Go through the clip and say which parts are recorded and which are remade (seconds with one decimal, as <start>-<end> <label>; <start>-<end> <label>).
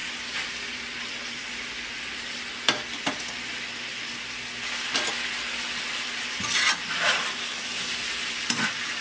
0.0-9.0 recorded